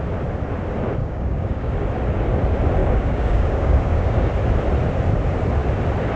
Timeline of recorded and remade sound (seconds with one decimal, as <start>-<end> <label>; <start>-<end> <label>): 0.0-1.0 recorded; 1.0-1.8 remade; 1.8-2.8 recorded; 2.8-4.3 remade; 4.3-6.2 recorded